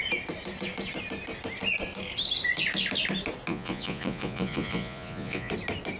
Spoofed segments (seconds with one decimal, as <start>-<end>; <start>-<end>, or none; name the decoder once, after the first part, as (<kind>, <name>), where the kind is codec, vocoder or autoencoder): 3.5-5.5 (vocoder, Vocos)

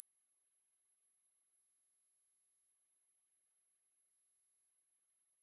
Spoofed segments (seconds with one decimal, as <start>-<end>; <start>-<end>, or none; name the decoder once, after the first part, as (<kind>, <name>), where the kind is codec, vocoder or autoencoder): 0.0-1.6 (vocoder, BigVGAN v2); 2.7-4.1; 4.7-5.4

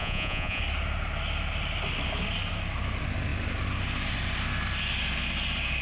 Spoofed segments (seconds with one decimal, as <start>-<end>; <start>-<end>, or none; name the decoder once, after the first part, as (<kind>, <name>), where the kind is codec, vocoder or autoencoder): 0.0-0.6 (vocoder, Vocos)

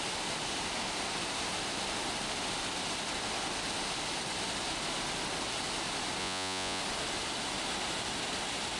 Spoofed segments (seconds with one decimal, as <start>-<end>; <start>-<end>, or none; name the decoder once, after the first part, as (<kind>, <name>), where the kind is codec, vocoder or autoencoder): 6.2-6.8 (vocoder, Vocos)

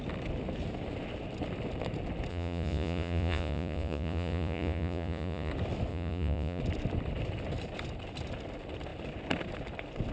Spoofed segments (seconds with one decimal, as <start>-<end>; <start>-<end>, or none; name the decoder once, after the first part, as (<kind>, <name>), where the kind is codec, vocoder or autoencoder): 2.3-5.5 (vocoder, Vocos); 5.9-6.6

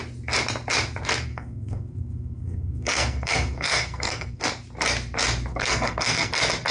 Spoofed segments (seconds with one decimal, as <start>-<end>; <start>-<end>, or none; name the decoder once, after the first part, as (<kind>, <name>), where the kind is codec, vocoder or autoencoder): 1.3-4.4 (codec, SNAC); 5.5-6.3

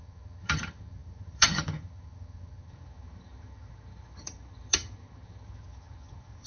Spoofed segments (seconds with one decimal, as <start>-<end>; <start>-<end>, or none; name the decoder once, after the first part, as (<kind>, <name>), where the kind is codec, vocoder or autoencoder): 0.0-6.5 (vocoder, HiFi-GAN)